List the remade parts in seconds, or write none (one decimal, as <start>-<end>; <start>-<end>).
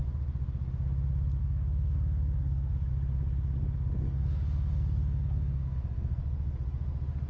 1.4-2.9; 4.0-6.2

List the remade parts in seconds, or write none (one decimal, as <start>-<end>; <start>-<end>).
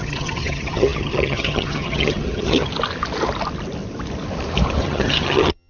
0.0-2.7; 4.8-5.7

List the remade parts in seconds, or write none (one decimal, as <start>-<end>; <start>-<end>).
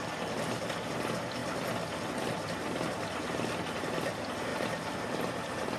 none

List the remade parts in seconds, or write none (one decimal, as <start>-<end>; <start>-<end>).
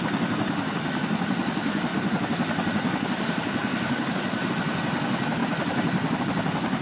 5.4-6.2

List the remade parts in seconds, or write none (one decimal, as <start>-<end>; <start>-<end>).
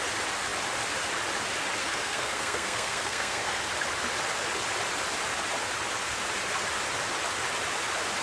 1.8-3.6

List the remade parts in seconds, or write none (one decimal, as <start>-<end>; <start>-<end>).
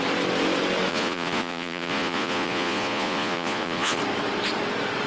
0.9-4.0